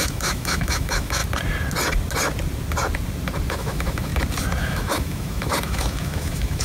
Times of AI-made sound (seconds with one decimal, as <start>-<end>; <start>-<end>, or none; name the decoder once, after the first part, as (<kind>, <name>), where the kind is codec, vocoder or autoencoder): 0.0-1.2 (autoencoder, DAC-VAE); 3.5-4.1; 4.6-6.6